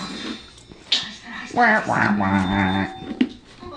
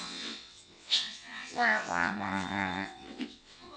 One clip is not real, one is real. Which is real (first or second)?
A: first